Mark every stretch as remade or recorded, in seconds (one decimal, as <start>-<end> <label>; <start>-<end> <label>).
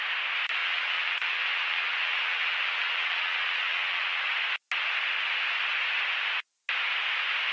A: 0.0-0.6 recorded; 0.6-4.2 remade; 4.2-7.5 recorded